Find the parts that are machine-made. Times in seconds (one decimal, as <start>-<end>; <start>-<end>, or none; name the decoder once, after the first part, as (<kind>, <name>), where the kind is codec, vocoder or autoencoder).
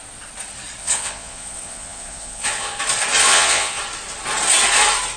0.8-2.8 (vocoder, Vocos); 3.2-3.8